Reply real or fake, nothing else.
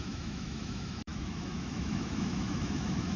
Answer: fake